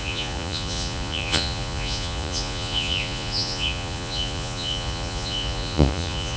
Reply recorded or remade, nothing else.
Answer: remade